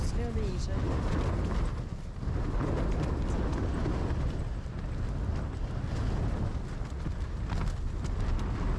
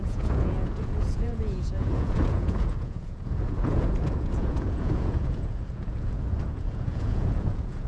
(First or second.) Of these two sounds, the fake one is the second